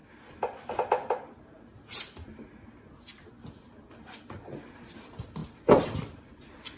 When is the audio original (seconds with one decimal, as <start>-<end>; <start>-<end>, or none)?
0.0-6.8